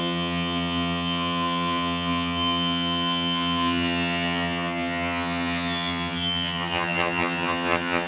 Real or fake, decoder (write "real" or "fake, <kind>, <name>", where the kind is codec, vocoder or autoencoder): fake, vocoder, HiFi-GAN